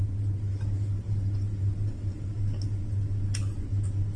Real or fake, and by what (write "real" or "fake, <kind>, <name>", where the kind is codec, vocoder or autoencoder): real